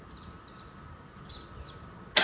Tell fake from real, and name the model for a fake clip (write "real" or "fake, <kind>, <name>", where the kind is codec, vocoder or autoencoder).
real